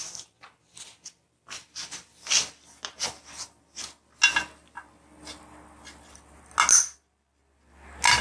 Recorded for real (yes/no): yes